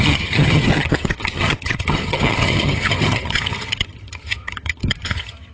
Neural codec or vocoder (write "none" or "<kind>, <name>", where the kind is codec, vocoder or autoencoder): vocoder, HiFi-GAN